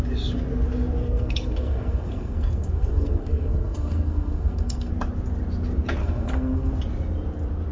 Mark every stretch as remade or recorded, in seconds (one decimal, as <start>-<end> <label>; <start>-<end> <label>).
0.0-1.0 recorded; 1.0-4.9 remade; 4.9-6.0 recorded; 6.0-6.7 remade; 6.7-7.7 recorded